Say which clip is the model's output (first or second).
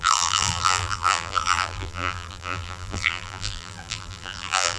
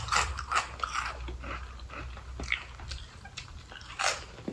first